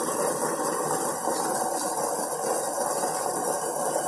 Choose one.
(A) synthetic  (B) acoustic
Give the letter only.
B